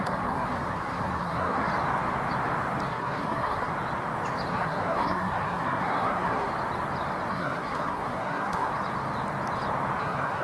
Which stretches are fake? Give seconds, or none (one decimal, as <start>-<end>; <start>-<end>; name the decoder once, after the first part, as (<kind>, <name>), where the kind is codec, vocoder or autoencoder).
0.0-1.7 (codec, SNAC); 2.9-3.7; 4.5-6.5; 7.3-8.7; 10.0-10.4